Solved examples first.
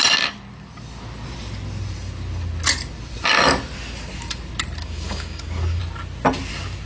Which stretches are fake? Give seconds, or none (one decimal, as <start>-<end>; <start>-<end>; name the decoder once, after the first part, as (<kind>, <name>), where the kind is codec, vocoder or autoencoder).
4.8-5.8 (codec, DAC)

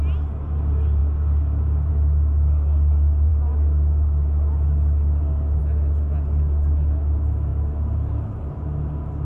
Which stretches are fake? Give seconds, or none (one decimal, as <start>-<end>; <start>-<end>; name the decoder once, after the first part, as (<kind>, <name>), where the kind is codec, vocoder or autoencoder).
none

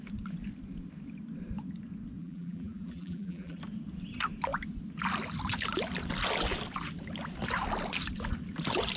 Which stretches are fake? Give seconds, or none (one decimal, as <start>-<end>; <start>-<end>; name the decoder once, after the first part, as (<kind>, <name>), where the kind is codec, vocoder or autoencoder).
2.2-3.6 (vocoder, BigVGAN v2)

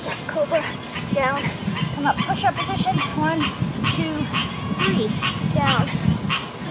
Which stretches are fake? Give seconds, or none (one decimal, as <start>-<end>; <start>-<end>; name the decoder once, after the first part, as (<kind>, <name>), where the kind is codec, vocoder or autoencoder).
4.4-5.1 (vocoder, Vocos)